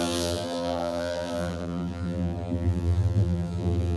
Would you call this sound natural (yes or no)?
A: no